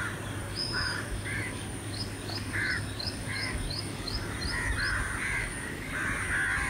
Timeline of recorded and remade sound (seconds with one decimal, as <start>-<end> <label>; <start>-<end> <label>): 0.0-0.4 recorded; 0.4-4.3 remade; 4.3-5.4 recorded; 5.4-5.9 remade; 5.9-6.7 recorded